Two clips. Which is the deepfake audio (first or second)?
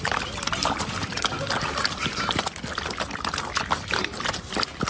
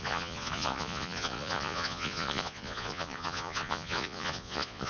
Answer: second